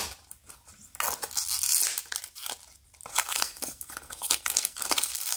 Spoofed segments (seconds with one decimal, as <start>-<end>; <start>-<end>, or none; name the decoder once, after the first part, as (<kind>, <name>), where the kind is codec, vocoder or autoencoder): 3.1-5.4 (codec, SNAC)